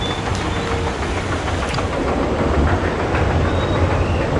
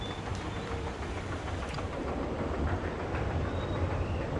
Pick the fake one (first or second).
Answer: second